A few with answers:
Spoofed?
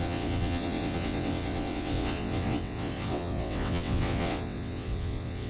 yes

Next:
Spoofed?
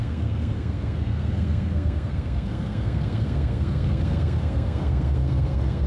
yes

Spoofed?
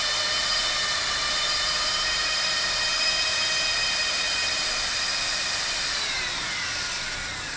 yes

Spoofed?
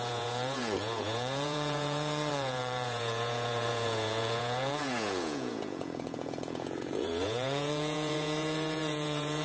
yes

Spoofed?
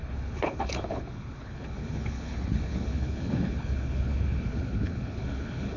yes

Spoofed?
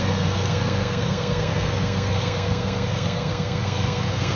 yes